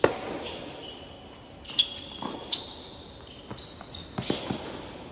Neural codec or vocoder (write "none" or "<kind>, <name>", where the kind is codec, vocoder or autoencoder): none